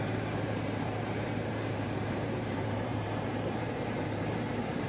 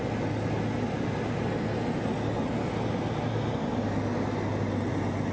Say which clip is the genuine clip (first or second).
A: second